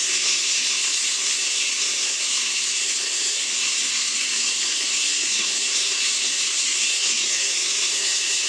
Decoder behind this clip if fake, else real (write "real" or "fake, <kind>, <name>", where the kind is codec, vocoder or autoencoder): fake, codec, SNAC